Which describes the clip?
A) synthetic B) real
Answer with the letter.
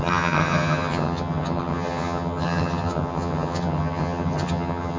A